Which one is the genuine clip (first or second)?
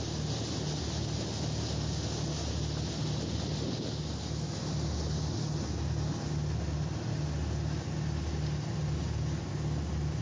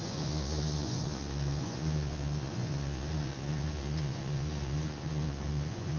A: first